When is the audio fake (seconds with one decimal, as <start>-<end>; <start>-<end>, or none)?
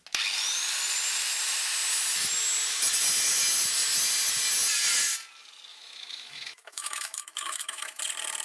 5.7-8.0